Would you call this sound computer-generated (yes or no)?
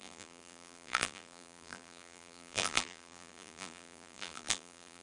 yes